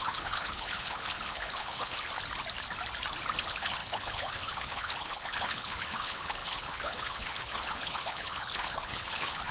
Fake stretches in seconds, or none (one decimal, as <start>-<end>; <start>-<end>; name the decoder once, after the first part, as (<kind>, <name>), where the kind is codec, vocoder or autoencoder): 0.0-2.1 (codec, HILCodec); 3.4-9.5